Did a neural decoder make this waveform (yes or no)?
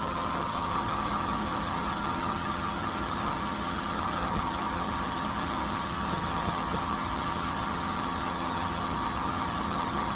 yes